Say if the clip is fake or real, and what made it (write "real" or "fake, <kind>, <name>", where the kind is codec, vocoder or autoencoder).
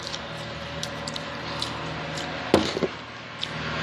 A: real